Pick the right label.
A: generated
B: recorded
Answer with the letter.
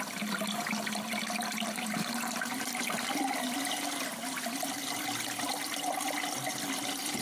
B